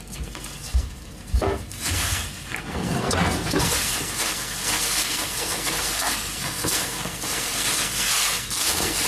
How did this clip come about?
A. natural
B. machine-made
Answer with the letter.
B